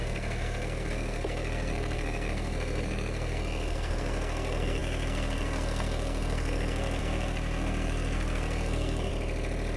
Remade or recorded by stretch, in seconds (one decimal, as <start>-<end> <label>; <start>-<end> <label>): 0.0-9.1 remade; 9.1-9.8 recorded